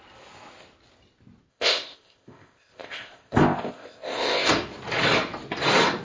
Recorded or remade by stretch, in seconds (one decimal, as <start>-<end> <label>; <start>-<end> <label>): 0.0-1.5 recorded; 1.5-4.5 remade; 4.5-6.0 recorded